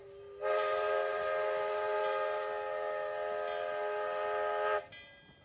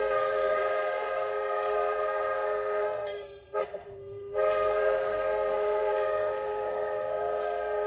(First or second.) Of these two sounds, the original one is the first